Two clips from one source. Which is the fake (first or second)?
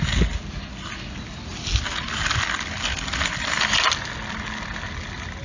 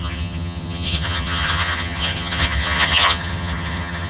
second